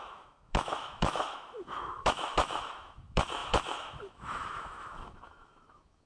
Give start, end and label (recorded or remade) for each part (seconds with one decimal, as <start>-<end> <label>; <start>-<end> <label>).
0.0-6.1 remade